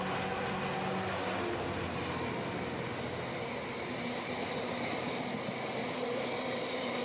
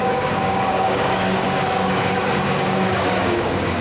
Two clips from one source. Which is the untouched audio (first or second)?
first